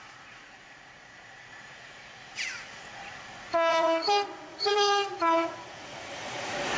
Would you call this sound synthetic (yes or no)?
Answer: yes